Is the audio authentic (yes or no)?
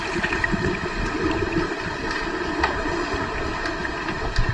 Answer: yes